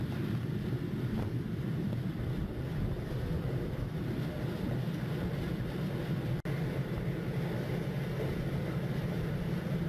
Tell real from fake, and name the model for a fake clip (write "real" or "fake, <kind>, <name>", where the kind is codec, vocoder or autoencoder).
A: real